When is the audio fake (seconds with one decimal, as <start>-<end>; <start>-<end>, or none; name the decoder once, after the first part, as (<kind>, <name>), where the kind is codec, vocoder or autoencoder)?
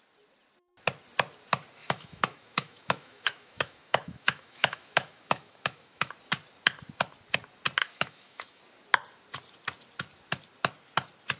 1.8-6.1 (autoencoder, DAC-VAE); 7.8-8.6